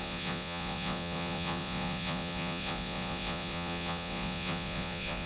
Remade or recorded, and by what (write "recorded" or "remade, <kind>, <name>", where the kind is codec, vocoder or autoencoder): remade, vocoder, Vocos